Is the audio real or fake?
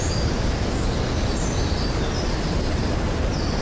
real